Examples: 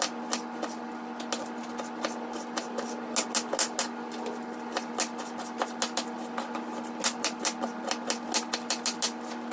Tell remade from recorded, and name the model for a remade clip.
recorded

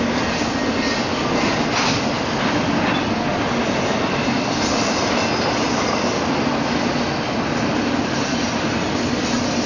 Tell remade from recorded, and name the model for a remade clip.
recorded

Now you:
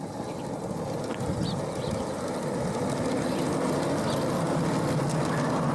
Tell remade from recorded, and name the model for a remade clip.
recorded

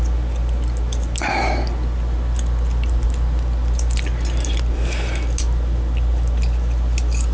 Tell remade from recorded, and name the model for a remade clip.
recorded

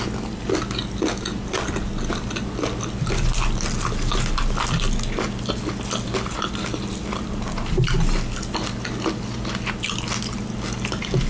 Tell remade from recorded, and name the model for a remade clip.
recorded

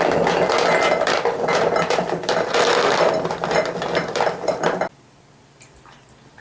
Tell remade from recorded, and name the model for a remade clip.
remade, vocoder, BigVGAN v2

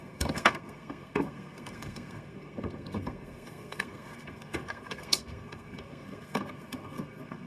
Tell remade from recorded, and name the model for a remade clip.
remade, codec, SNAC